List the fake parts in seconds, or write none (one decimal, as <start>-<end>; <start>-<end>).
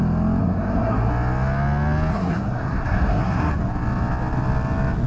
0.4-1.1; 2.1-3.5